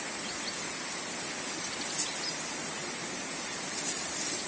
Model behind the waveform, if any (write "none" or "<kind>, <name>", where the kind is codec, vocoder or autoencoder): none